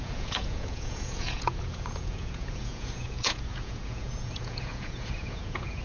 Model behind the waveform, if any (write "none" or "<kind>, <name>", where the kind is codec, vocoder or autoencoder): vocoder, Vocos